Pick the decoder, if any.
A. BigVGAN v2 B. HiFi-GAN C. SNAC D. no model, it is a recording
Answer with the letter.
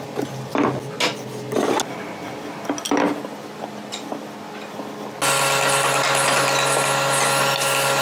D